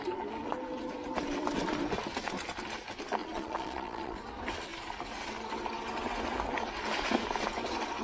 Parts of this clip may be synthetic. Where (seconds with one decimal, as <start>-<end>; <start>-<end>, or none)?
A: 3.2-4.2